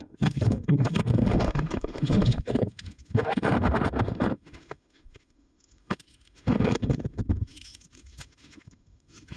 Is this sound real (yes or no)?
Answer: no